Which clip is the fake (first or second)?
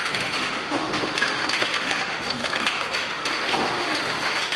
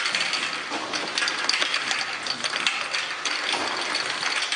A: first